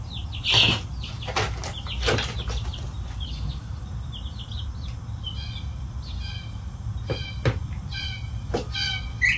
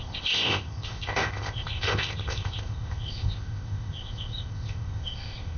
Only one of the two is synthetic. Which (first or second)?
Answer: second